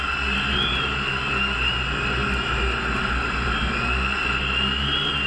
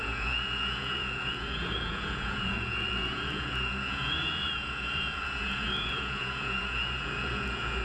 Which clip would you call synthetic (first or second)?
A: second